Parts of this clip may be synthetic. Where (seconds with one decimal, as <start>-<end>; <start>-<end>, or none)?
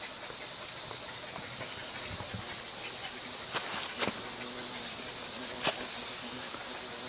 none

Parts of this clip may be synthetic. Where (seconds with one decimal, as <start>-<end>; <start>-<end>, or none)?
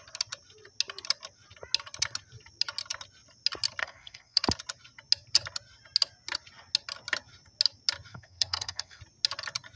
3.8-4.4; 8.1-9.0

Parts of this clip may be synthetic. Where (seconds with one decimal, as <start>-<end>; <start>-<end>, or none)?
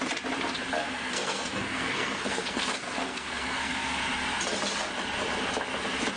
0.7-4.0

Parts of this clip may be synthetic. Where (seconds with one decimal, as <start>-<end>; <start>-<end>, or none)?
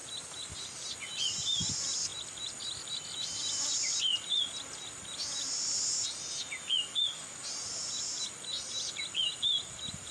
none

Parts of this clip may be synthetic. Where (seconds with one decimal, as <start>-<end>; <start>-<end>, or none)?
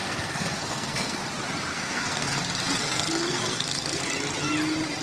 0.0-1.2; 1.7-2.4; 2.8-4.1